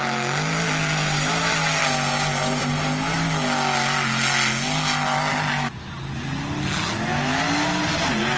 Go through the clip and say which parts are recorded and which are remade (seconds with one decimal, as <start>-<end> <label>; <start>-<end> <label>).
0.0-8.4 recorded